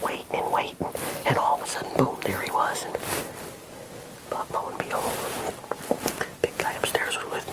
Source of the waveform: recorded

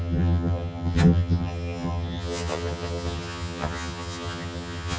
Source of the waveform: remade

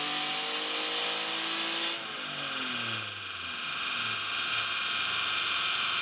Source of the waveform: recorded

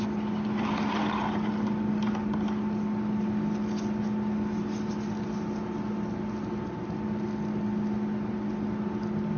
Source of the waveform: recorded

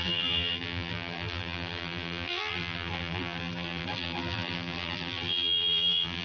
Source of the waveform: remade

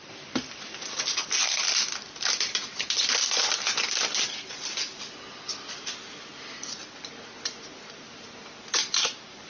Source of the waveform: recorded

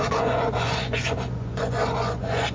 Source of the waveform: remade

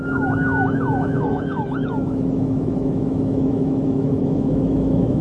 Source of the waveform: remade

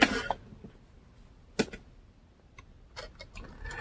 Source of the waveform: recorded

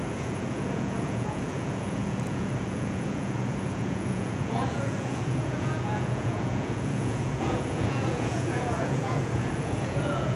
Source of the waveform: remade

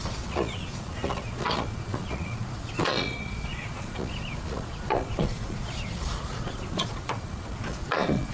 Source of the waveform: remade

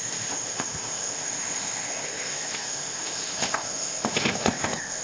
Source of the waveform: remade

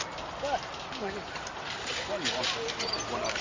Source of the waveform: recorded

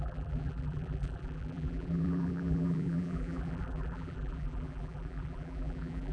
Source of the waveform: remade